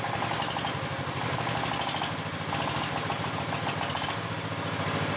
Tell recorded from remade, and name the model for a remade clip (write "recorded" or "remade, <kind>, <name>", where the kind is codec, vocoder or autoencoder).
recorded